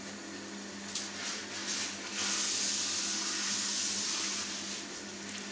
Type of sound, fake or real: real